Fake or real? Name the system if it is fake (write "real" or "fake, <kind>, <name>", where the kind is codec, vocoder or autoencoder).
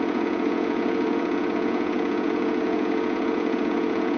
fake, vocoder, Vocos